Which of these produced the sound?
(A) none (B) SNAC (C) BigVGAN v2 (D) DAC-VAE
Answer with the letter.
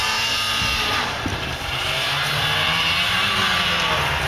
C